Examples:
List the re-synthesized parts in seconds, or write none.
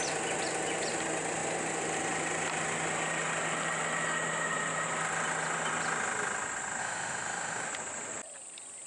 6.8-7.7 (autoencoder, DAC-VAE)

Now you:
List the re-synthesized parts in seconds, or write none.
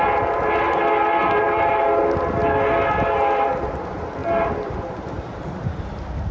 1.2-2.0 (vocoder, BigVGAN v2); 4.2-5.8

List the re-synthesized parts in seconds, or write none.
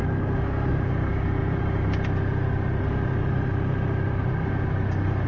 none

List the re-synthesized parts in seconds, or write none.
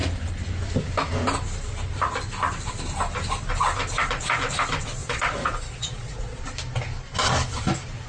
5.0-6.4 (vocoder, Vocos)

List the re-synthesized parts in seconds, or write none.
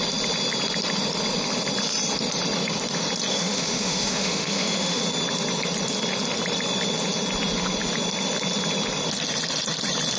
3.3-5.0 (autoencoder, DAC-VAE)